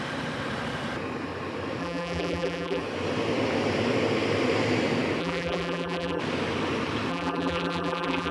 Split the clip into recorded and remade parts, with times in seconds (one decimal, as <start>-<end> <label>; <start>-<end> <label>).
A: 0.0-1.8 recorded; 1.8-2.8 remade; 2.8-5.2 recorded; 5.2-6.2 remade; 6.2-7.1 recorded; 7.1-8.3 remade